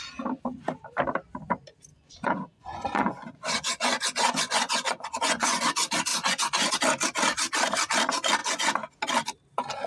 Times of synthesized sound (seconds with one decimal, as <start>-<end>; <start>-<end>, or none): 1.9-5.6; 6.1-6.7; 8.4-9.0